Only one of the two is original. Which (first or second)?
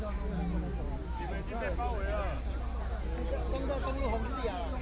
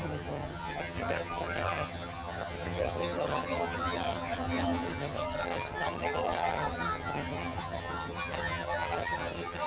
first